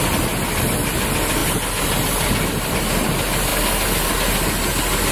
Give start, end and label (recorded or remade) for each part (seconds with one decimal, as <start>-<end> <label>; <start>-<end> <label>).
0.0-5.1 recorded